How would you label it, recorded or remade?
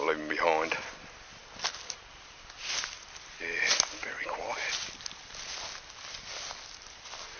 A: recorded